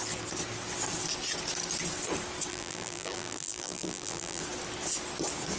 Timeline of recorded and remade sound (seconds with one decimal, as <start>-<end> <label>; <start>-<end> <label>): 0.0-2.5 recorded; 2.5-4.4 remade; 4.4-5.6 recorded